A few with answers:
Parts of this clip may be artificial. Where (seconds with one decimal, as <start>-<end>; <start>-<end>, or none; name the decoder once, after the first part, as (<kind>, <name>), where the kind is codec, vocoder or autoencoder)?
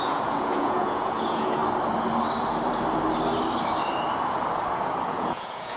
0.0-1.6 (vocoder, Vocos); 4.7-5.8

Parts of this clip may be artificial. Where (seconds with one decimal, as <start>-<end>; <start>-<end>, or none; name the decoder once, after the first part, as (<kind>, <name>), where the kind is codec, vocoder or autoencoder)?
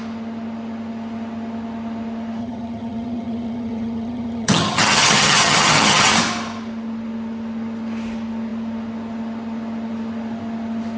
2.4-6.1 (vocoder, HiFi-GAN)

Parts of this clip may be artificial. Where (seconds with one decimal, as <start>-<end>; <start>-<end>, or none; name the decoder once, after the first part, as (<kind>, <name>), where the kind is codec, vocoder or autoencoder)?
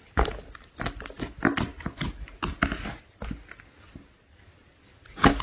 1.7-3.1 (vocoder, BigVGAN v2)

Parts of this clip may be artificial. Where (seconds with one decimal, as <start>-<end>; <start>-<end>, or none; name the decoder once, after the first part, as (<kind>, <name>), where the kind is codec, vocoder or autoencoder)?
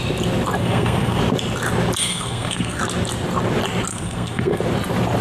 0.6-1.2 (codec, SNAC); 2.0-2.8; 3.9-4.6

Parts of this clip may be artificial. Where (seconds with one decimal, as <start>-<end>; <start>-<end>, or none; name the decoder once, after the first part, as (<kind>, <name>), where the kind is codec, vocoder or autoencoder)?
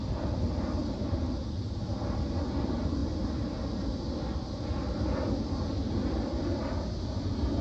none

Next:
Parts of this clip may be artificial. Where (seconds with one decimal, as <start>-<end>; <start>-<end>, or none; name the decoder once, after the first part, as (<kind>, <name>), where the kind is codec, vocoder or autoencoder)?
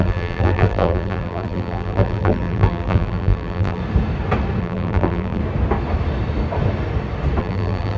0.0-3.8 (vocoder, BigVGAN v2); 4.6-5.4; 7.4-8.0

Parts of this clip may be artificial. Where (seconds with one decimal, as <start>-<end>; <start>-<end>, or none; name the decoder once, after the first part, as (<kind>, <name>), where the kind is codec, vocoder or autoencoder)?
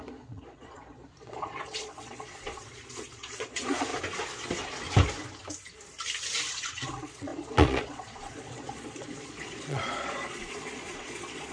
0.0-3.9 (vocoder, Vocos); 6.5-11.5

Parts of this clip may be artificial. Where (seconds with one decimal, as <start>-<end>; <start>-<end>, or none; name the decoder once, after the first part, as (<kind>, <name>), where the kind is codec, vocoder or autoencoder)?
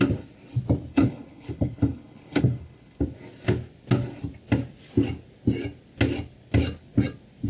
0.9-3.0 (codec, HILCodec)